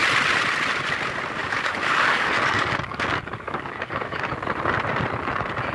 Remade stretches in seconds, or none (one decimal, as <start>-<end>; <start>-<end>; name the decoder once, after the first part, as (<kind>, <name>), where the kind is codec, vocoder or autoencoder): 1.4-4.3 (codec, DAC)

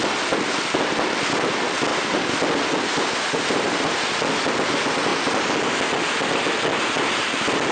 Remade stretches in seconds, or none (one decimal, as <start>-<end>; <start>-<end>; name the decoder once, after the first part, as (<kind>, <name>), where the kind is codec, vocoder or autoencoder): 1.9-2.4 (vocoder, BigVGAN v2); 2.9-3.9

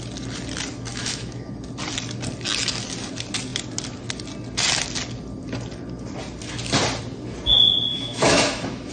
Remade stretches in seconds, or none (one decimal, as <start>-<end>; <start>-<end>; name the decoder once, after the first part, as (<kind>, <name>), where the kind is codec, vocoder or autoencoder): 0.9-1.5 (autoencoder, DAC-VAE); 7.9-8.9

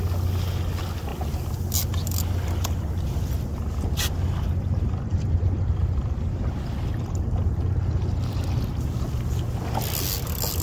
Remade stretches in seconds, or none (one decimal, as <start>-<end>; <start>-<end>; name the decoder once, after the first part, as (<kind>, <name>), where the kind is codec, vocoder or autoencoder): 5.1-7.8 (vocoder, BigVGAN v2)

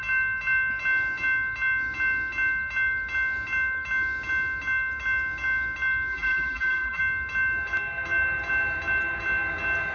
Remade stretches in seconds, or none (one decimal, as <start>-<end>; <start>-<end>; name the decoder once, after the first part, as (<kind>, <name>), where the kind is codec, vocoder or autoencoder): 6.1-7.0 (vocoder, BigVGAN v2)